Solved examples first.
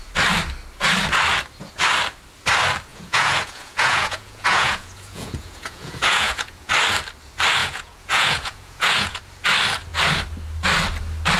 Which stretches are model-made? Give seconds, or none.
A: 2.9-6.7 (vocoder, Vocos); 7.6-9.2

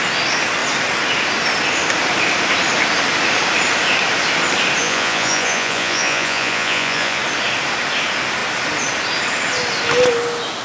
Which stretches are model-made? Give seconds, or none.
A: 4.8-7.2 (vocoder, Vocos)

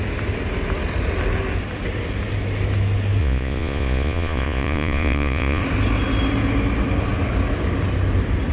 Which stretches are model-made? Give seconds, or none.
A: 3.2-5.6 (vocoder, Vocos)

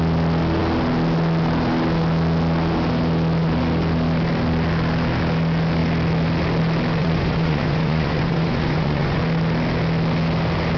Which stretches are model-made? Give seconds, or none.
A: 7.0-9.2 (vocoder, Vocos)

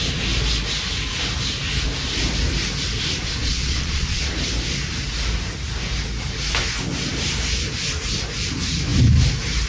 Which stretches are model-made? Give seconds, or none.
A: 3.4-4.3 (vocoder, Vocos)

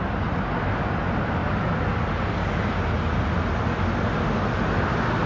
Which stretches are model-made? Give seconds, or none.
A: none

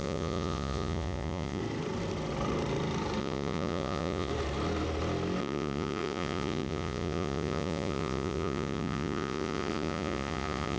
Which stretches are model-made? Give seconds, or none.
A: 0.0-1.6 (vocoder, Vocos); 3.2-4.3; 5.4-10.8